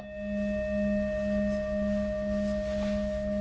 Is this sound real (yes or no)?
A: yes